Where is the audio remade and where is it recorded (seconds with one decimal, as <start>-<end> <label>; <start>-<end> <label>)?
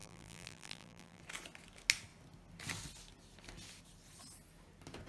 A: 0.0-1.2 remade; 1.2-5.1 recorded